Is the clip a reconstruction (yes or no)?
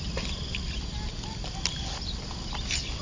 no